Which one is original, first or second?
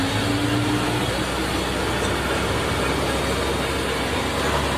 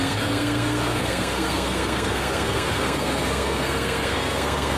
first